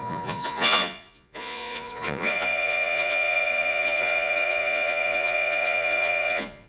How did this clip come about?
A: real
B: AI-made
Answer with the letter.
B